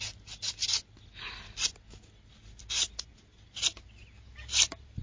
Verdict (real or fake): real